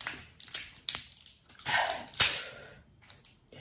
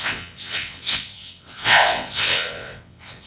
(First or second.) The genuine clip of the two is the first